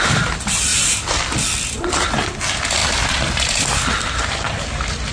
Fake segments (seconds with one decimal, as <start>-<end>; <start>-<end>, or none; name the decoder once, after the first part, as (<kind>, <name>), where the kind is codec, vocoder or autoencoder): none

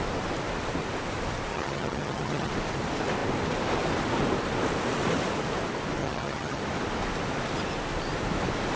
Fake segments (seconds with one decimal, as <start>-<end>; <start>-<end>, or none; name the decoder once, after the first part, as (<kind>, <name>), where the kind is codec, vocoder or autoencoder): 1.5-2.5 (vocoder, HiFi-GAN); 6.0-6.6

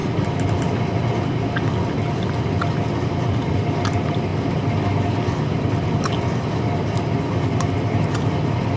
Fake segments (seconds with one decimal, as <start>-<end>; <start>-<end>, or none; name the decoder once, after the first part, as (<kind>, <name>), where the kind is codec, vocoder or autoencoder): none

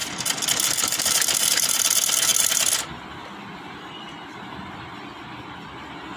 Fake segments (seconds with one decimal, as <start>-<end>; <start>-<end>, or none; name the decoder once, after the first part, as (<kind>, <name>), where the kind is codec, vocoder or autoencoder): none

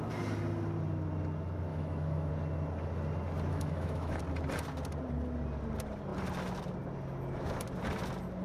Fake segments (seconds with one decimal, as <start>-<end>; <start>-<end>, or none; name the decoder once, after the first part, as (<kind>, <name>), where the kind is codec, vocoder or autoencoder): 1.7-2.3 (autoencoder, DAC-VAE); 3.5-4.2

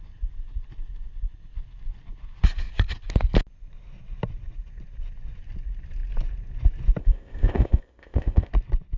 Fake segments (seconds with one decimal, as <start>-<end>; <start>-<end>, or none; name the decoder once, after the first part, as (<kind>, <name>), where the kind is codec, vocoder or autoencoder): 7.0-8.5 (codec, ZipCodec)

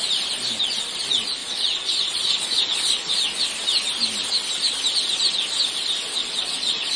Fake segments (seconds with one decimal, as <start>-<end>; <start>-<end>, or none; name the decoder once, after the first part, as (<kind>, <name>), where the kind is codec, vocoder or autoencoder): 1.4-3.4 (vocoder, Vocos); 6.2-7.0

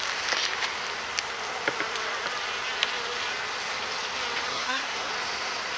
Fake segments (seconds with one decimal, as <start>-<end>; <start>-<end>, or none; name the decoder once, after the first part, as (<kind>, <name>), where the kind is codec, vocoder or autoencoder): 4.5-5.1 (codec, SNAC)